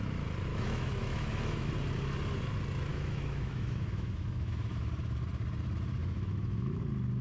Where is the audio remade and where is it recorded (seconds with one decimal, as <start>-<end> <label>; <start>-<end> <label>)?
0.0-0.5 recorded; 0.5-1.7 remade; 1.7-2.9 recorded; 2.9-4.9 remade; 4.9-6.0 recorded; 6.0-6.8 remade; 6.8-7.2 recorded